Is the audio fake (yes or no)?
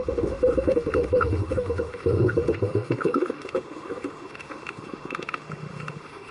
yes